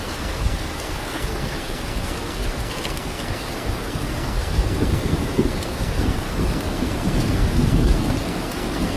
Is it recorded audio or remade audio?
remade